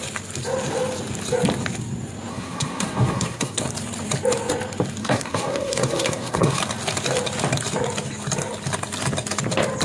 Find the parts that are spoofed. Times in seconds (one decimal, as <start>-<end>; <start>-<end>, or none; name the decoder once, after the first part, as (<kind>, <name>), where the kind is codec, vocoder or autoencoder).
2.3-3.6 (codec, SNAC); 5.0-6.6